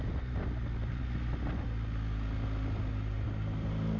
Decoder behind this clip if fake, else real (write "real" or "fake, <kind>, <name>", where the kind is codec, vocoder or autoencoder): real